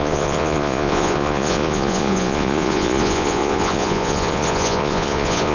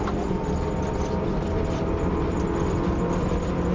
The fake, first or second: first